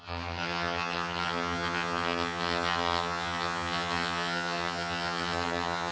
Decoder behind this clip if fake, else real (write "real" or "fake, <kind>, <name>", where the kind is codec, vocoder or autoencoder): fake, vocoder, HiFi-GAN